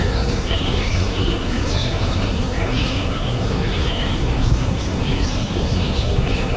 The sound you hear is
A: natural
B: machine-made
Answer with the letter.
B